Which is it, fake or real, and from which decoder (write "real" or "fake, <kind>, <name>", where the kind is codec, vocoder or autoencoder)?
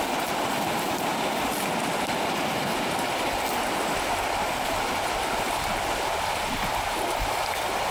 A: real